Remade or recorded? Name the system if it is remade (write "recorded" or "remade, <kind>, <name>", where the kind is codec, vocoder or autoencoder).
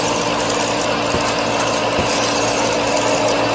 recorded